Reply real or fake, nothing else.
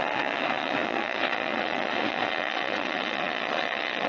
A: fake